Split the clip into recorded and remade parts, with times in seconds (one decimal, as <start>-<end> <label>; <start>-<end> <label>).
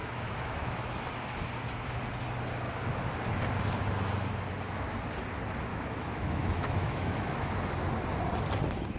0.0-0.9 remade; 0.9-5.7 recorded; 5.7-7.5 remade; 7.5-9.0 recorded